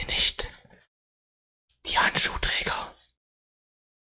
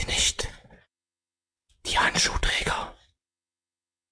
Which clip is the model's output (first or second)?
second